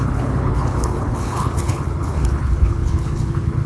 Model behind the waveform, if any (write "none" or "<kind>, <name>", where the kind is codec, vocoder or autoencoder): codec, HILCodec